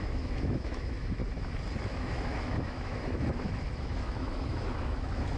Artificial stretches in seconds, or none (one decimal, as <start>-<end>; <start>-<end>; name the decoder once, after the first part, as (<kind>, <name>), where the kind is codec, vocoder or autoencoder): 0.0-1.2 (autoencoder, DAC-VAE); 1.8-5.4